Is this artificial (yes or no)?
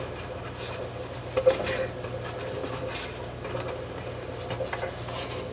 no